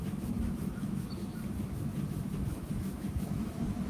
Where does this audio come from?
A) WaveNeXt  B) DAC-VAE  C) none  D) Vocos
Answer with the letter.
B